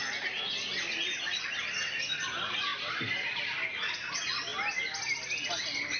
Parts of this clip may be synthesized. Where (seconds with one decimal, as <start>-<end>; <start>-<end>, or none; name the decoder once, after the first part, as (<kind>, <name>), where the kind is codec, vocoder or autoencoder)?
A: none